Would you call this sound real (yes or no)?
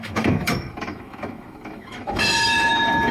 no